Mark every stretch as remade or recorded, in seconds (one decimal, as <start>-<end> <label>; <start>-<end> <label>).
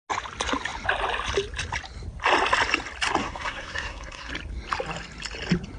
0.0-3.2 recorded; 3.2-4.3 remade; 4.3-5.8 recorded